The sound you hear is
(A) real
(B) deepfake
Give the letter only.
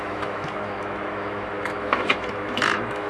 B